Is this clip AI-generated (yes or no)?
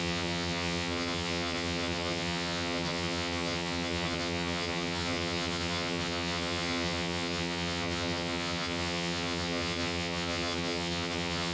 yes